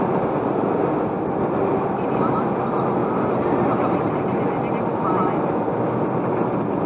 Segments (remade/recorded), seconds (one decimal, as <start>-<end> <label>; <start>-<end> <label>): 0.0-6.9 recorded